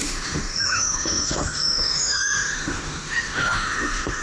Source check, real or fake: fake